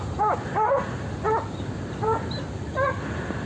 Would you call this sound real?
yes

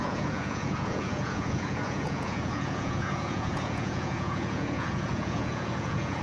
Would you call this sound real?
no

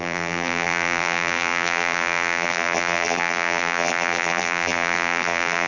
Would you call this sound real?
no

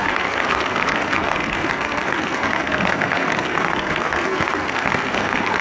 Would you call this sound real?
no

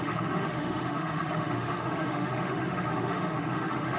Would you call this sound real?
no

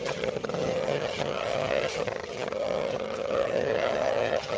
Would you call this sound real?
no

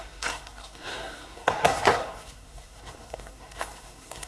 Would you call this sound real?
no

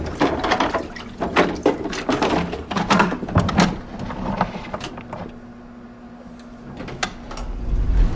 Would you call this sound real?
yes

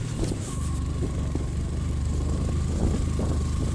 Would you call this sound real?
yes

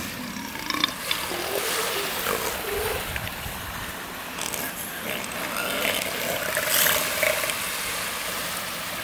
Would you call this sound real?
yes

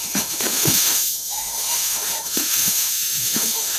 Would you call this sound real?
no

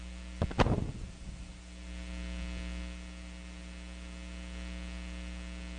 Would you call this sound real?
yes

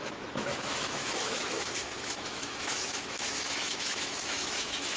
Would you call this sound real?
no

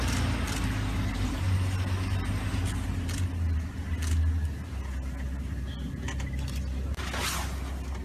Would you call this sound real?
yes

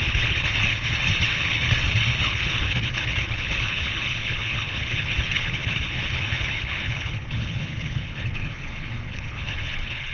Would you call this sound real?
no